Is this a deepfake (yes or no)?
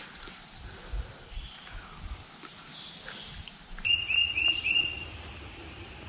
no